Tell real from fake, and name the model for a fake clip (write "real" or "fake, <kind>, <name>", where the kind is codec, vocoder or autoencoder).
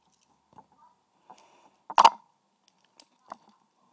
real